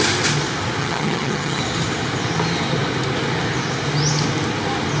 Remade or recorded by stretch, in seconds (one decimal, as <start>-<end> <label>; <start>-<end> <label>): 0.0-0.8 recorded; 0.8-1.6 remade; 1.6-5.0 recorded